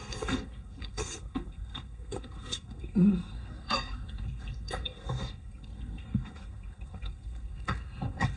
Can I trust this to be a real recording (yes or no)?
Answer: no